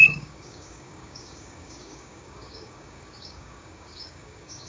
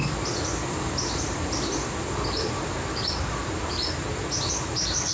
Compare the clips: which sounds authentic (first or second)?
second